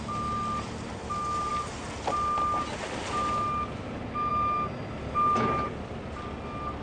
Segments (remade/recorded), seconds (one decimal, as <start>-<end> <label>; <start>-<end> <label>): 0.0-6.8 recorded